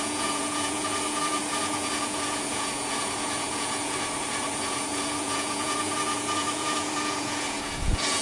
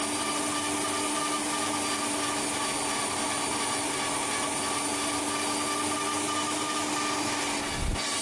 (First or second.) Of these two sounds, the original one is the second